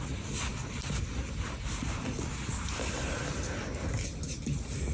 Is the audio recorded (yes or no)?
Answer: yes